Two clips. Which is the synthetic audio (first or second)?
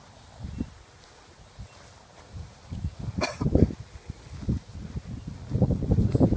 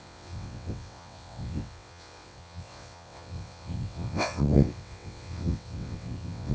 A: second